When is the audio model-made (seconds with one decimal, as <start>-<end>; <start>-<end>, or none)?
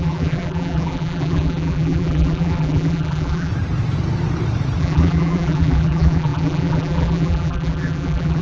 0.0-3.5; 4.8-8.4